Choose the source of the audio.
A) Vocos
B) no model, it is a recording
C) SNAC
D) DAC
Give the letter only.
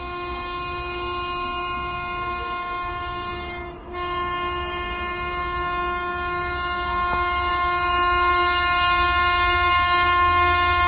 D